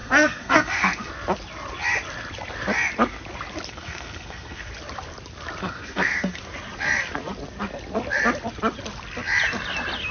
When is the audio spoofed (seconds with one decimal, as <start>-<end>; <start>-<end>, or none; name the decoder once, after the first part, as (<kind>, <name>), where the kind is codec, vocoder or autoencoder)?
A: 0.0-1.1 (codec, SNAC); 3.7-4.7; 5.6-6.4